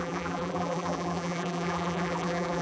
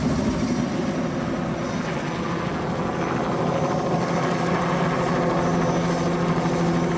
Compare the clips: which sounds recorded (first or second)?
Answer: second